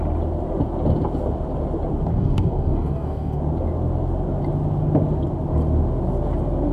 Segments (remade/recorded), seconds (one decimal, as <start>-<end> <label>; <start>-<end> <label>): 0.0-2.1 recorded; 2.1-3.4 remade; 3.4-6.7 recorded